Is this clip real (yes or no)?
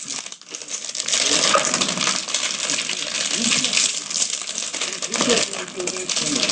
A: yes